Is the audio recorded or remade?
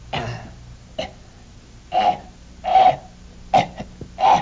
recorded